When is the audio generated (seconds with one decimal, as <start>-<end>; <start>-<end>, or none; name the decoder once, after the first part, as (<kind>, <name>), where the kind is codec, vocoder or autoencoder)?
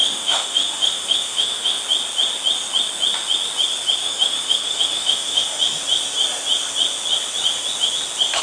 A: 0.0-1.8 (autoencoder, DAC-VAE); 4.0-5.6